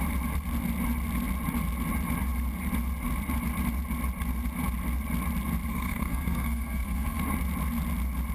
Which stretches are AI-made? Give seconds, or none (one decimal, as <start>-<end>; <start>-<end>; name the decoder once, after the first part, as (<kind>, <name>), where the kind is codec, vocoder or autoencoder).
5.7-7.2 (codec, SNAC)